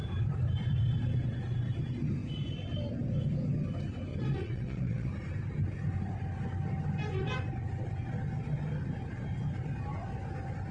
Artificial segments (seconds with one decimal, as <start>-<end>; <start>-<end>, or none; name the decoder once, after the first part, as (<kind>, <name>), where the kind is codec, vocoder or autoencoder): 4.1-5.1 (vocoder, WaveNeXt)